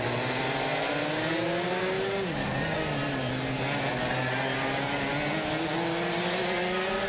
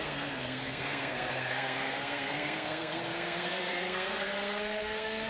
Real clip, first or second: first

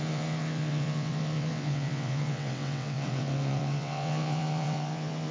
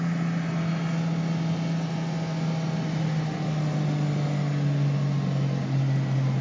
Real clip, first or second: second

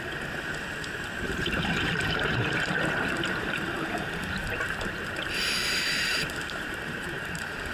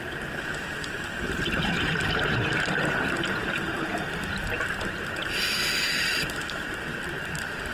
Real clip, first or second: second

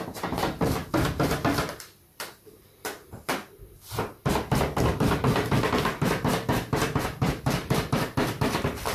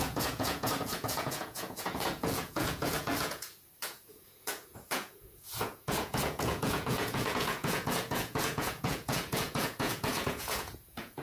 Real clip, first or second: first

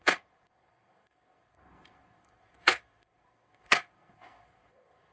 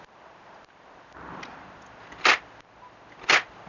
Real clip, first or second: second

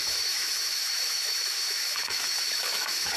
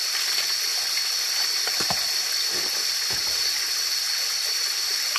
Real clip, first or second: second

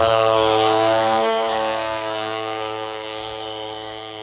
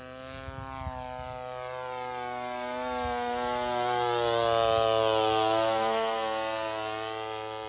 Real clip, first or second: second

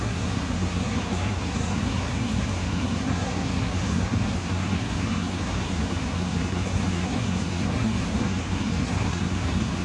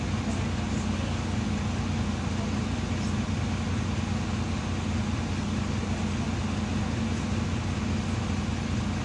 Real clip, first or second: second